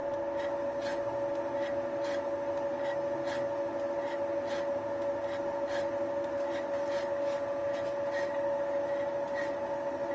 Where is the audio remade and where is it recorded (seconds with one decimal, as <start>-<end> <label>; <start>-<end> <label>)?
0.0-10.1 recorded